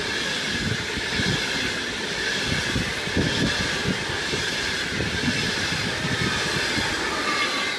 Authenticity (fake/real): real